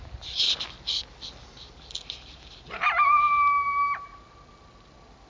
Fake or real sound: real